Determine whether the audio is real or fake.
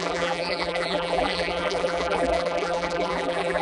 fake